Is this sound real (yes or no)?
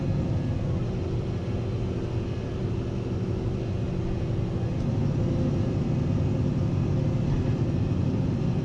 yes